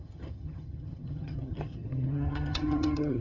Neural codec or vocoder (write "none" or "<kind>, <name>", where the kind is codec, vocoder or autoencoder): vocoder, HiFi-GAN